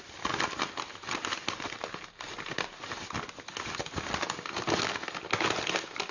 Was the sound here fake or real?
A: real